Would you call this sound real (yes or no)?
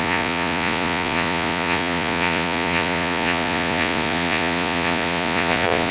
no